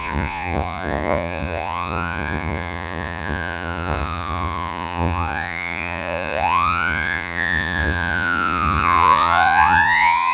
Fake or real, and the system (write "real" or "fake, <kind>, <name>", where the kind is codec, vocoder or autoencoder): fake, vocoder, Vocos